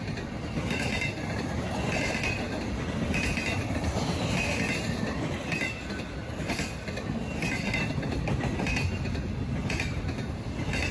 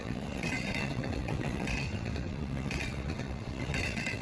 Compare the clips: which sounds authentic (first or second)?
first